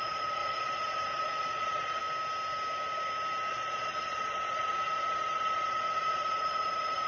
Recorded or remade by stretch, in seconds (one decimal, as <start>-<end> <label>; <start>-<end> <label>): 0.0-2.0 remade; 2.0-3.5 recorded; 3.5-7.1 remade